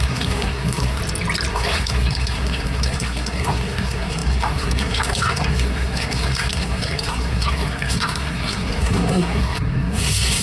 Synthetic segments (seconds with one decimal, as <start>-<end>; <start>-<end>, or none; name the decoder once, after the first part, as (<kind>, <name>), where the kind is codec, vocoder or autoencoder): 0.0-1.0 (codec, SNAC); 1.5-10.4